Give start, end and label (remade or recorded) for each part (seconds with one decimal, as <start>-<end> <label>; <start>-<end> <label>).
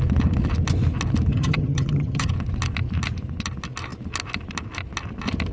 0.0-1.3 recorded; 1.3-2.3 remade; 2.3-5.5 recorded